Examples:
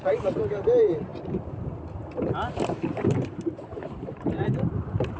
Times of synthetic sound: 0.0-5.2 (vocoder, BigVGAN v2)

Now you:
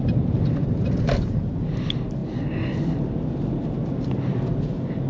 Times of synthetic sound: 0.6-1.4 (vocoder, BigVGAN v2)

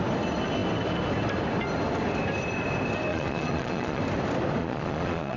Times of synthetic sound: 3.1-4.0 (vocoder, Vocos); 4.6-5.4

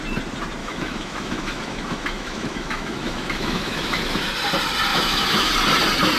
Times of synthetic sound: 0.6-4.3 (autoencoder, DAC-VAE); 4.9-5.5